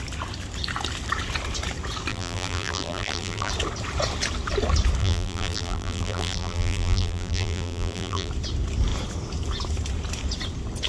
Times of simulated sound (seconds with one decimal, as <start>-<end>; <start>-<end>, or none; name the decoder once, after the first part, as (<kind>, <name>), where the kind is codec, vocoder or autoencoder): 2.1-3.5 (vocoder, BigVGAN v2); 5.0-8.3